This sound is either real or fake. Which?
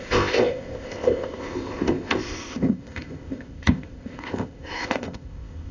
fake